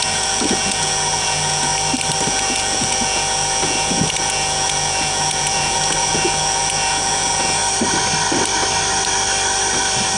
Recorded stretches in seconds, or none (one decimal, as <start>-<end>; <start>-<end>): 1.7-2.3; 7.6-10.2